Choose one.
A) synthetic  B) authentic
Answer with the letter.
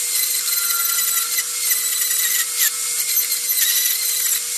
B